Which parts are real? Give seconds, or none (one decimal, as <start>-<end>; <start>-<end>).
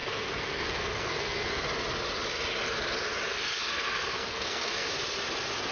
1.5-3.3; 4.9-5.7